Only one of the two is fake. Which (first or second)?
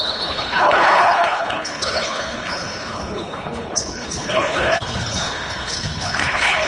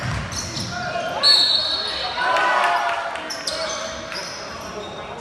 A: first